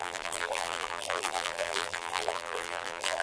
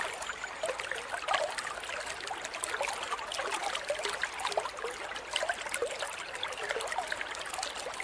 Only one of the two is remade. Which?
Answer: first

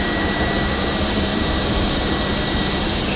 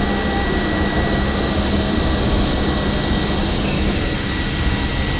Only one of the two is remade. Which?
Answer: first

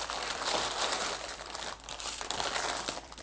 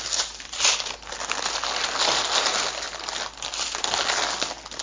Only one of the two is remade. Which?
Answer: first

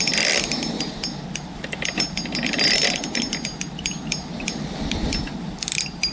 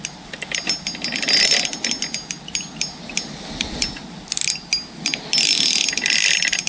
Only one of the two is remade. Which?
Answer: first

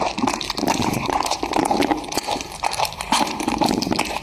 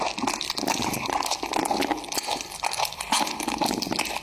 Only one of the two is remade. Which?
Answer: first